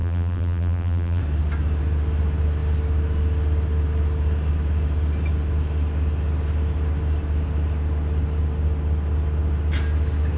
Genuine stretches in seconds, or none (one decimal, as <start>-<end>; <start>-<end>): 1.2-10.4